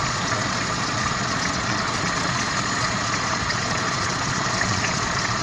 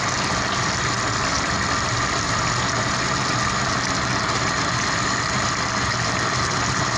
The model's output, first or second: first